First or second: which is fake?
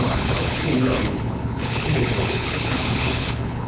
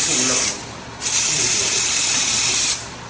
first